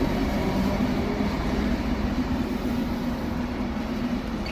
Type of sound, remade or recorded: remade